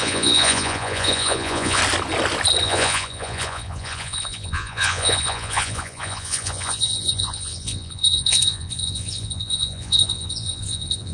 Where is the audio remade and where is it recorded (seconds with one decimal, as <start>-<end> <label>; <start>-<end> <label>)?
0.0-1.8 remade; 1.8-2.6 recorded; 2.6-11.1 remade